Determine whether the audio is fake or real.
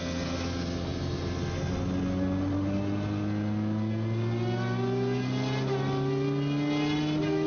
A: real